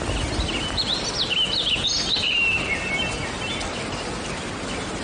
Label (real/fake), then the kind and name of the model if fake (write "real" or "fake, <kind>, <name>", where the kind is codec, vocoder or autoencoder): real